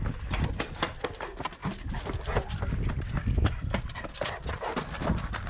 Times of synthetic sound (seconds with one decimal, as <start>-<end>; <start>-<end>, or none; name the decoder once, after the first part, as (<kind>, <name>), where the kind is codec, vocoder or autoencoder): none